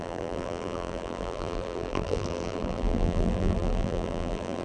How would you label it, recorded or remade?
remade